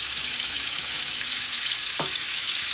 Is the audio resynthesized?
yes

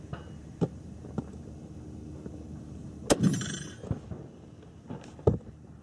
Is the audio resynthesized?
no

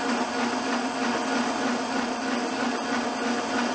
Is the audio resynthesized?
no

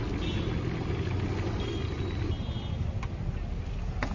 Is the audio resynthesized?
no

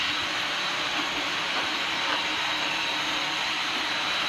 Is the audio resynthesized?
yes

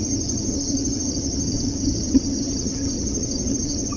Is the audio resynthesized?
yes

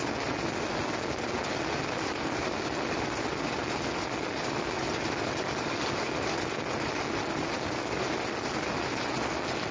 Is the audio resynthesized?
no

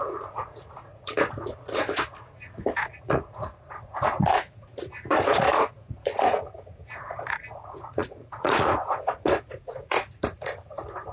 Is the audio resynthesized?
yes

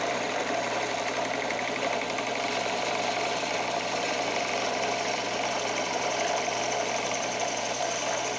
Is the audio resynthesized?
yes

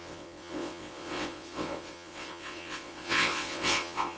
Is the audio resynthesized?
yes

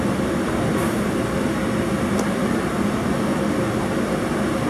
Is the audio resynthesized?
no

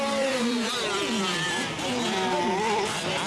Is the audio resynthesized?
yes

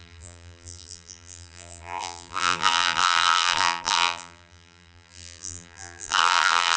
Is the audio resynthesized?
yes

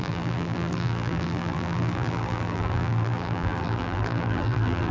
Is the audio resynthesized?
yes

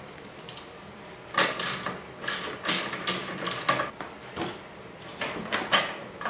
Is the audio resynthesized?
yes